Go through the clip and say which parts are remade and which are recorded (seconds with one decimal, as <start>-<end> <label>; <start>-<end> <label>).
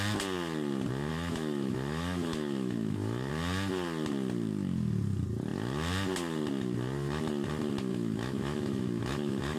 0.0-1.1 recorded; 1.1-3.3 remade; 3.3-7.9 recorded; 7.9-9.6 remade